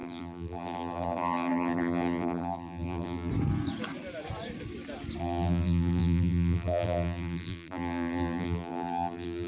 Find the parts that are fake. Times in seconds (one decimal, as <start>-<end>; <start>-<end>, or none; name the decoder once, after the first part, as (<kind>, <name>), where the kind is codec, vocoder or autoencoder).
0.0-3.3 (vocoder, BigVGAN v2); 5.2-9.5